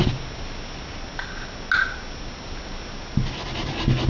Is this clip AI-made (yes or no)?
no